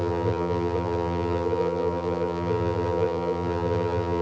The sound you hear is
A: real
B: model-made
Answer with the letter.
B